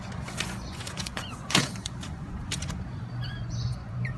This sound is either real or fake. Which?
fake